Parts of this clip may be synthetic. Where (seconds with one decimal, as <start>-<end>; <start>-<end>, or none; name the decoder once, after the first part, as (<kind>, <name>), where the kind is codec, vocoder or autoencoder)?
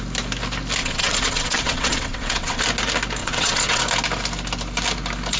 0.8-2.6 (vocoder, WaveNeXt); 3.2-3.8